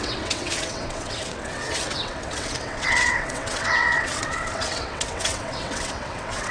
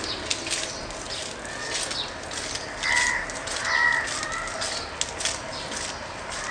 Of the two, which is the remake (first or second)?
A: first